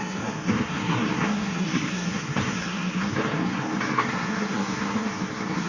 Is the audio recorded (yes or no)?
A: no